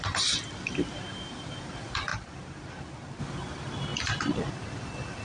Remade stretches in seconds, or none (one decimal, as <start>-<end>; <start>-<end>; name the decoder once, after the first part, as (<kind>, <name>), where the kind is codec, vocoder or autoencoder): 0.0-5.2 (vocoder, BigVGAN v2)